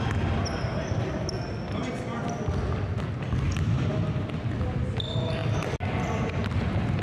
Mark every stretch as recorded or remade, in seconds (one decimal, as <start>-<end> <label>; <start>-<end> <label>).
0.0-7.0 recorded